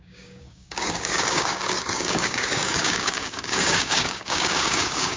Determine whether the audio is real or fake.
fake